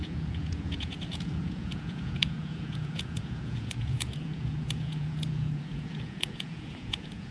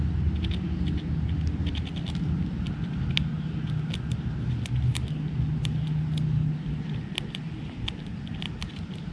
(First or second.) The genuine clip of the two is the second